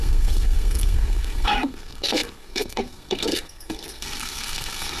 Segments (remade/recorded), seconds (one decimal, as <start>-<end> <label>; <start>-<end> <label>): 0.0-5.0 remade